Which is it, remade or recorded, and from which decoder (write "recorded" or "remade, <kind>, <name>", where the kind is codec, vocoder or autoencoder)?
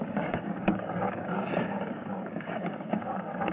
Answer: remade, codec, DAC